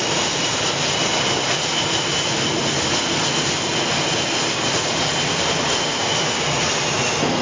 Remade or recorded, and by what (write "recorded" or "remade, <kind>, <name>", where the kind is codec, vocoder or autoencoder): recorded